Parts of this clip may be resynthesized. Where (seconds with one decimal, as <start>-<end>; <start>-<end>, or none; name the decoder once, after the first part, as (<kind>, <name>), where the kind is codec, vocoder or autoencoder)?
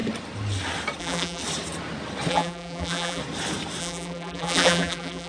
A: 1.0-1.4 (vocoder, BigVGAN v2); 2.3-3.2; 3.8-5.3